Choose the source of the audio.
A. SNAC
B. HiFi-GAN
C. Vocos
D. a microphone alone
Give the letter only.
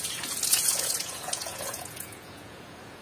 C